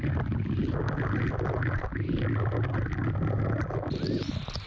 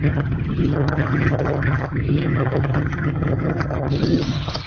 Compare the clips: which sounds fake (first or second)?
second